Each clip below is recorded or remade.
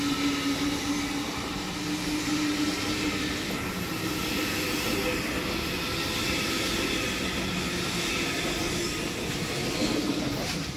recorded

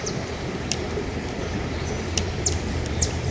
remade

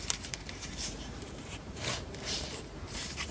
remade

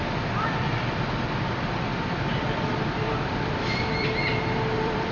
remade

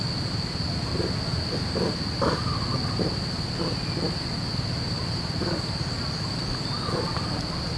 recorded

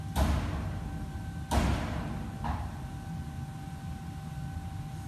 recorded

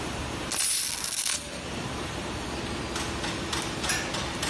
recorded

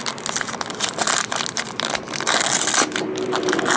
recorded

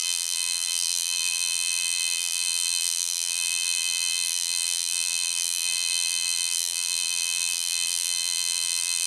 remade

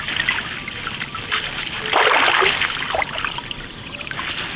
recorded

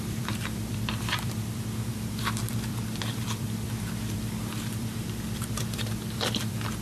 remade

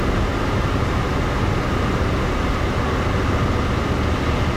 recorded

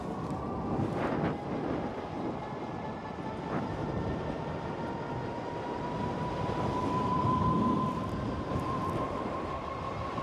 recorded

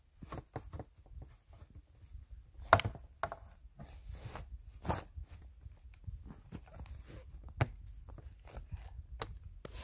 recorded